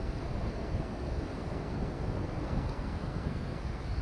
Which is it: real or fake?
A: fake